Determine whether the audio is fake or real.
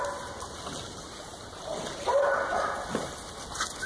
real